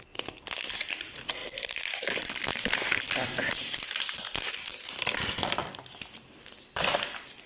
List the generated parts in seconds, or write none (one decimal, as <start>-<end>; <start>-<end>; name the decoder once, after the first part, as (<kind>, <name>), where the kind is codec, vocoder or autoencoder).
1.4-2.0 (vocoder, BigVGAN v2); 2.5-3.5; 4.7-5.3; 5.7-6.8